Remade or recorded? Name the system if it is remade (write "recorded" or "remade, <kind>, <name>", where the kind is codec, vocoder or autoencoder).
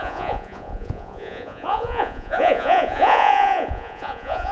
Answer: remade, vocoder, Vocos